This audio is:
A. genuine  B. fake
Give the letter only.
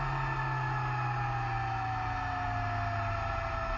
A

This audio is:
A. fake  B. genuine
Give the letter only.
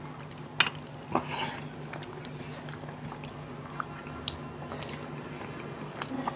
B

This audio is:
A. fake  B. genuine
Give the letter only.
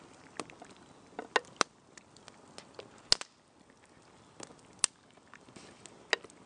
B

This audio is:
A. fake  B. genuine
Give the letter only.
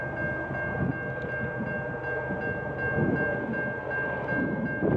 B